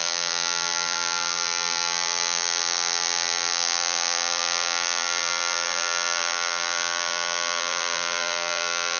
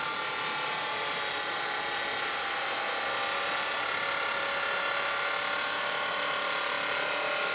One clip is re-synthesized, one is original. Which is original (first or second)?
second